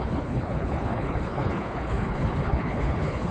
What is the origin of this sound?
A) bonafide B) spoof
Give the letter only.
B